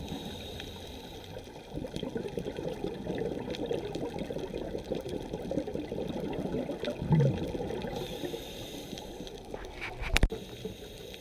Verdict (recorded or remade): remade